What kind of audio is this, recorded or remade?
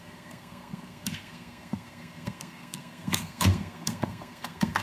remade